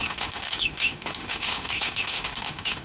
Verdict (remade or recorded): remade